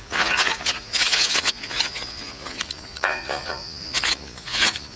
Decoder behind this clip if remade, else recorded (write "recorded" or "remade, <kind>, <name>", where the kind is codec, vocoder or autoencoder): remade, vocoder, Vocos